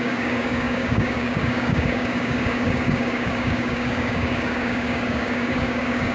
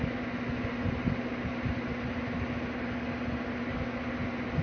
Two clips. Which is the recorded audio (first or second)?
second